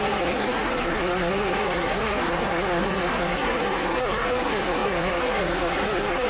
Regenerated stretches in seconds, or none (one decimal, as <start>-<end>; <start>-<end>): 0.0-6.3